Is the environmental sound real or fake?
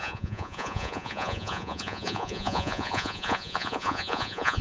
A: fake